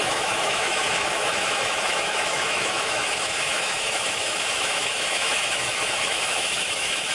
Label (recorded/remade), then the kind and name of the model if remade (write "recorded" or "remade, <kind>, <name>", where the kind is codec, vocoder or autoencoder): remade, autoencoder, DAC-VAE